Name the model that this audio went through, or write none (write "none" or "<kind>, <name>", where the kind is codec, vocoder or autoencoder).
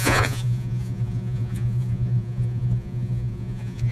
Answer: vocoder, Vocos